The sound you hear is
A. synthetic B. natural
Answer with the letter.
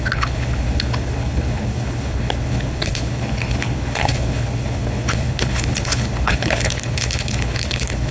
A